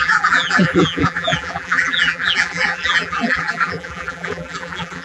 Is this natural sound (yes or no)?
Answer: no